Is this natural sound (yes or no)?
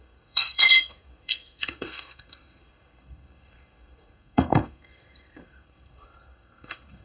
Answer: no